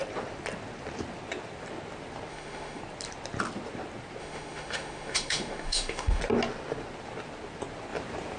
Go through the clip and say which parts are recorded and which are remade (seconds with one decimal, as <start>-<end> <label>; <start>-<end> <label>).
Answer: 0.0-2.3 recorded; 2.3-2.8 remade; 2.8-4.2 recorded; 4.2-6.2 remade; 6.2-8.4 recorded